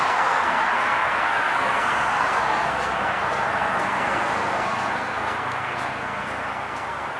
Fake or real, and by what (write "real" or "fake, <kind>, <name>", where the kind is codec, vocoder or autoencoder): fake, codec, SNAC